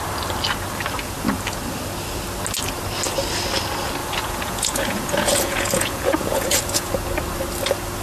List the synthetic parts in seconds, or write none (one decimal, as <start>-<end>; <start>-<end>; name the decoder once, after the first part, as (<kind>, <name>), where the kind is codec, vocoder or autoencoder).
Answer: 4.0-6.9 (vocoder, Vocos)